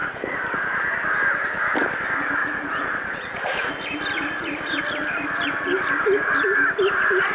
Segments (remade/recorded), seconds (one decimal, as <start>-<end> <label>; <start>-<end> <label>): 0.0-2.4 recorded; 2.4-3.7 remade; 3.7-7.3 recorded